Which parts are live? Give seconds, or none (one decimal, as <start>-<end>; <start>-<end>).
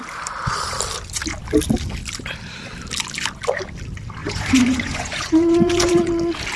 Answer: 0.0-4.2; 6.1-6.6